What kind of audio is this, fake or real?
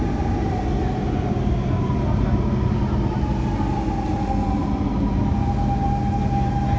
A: real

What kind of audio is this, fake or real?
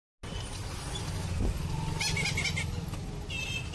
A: real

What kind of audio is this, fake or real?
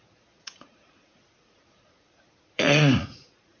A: fake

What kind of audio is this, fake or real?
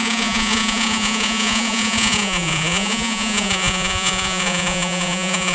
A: fake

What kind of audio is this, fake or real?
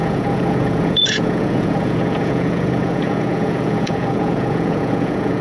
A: fake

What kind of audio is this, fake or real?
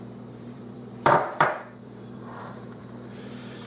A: fake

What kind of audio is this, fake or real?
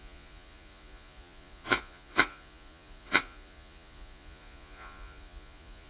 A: fake